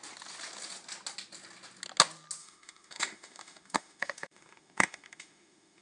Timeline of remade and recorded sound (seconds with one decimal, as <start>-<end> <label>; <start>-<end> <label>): 0.0-2.4 recorded; 2.4-5.8 remade